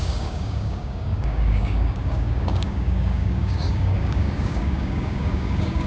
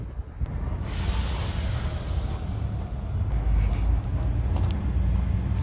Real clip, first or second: second